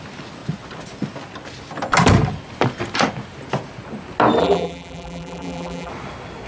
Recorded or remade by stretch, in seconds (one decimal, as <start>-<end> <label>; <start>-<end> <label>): 0.0-4.4 recorded; 4.4-5.9 remade; 5.9-6.5 recorded